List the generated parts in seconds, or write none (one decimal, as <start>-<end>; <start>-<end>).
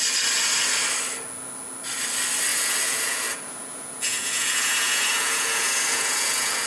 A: 2.5-6.7